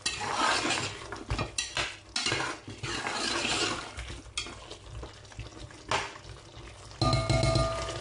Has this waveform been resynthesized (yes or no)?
no